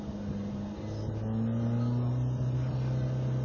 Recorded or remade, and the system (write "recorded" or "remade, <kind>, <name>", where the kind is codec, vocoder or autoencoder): recorded